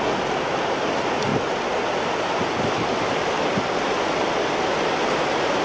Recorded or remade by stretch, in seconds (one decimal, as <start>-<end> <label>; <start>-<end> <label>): 0.0-5.6 recorded